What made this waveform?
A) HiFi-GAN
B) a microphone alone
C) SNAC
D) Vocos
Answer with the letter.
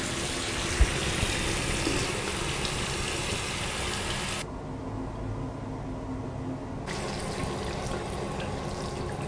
B